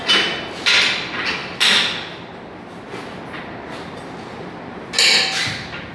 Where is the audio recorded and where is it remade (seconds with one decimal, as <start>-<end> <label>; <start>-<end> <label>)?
0.0-5.9 recorded